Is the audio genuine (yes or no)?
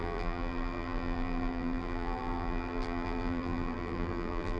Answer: no